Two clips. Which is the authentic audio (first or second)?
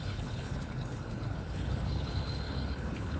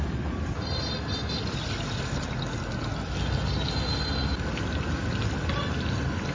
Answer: second